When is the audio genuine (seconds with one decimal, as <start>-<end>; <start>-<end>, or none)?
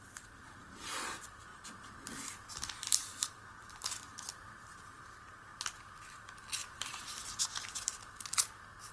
0.0-1.5; 2.5-6.6; 7.4-8.9